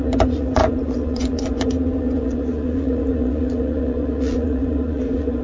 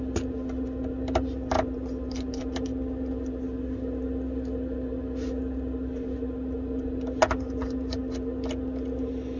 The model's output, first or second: first